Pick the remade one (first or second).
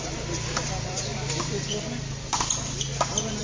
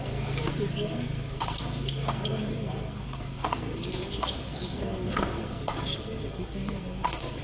second